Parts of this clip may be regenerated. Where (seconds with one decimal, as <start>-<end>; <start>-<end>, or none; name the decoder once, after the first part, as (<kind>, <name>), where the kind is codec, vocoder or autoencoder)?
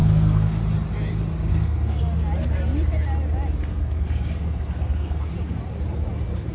0.0-0.6 (codec, SNAC); 1.5-2.0; 3.7-5.3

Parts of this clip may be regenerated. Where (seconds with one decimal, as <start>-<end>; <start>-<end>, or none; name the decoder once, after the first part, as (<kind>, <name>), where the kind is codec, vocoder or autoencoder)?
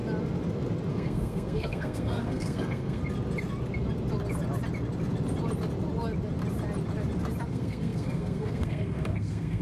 0.9-3.0 (codec, SNAC); 7.5-9.6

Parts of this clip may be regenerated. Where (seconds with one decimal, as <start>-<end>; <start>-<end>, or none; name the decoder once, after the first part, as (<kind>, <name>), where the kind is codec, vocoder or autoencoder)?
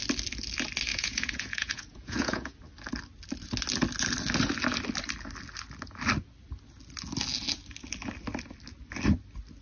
0.9-2.6 (vocoder, Vocos)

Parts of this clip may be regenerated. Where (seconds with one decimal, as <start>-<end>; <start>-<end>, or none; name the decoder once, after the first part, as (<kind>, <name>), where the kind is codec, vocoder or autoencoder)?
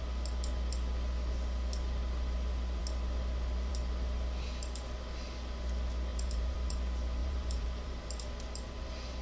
6.1-6.7 (vocoder, BigVGAN v2); 7.2-8.2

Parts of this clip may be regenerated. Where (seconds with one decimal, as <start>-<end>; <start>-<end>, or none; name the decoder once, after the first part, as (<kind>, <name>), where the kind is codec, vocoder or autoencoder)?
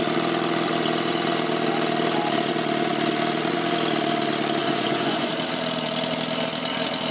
4.6-5.3 (vocoder, Vocos)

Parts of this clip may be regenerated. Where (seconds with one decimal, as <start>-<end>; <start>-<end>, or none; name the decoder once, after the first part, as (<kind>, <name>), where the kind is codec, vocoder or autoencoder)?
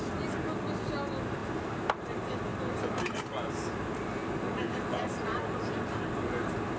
none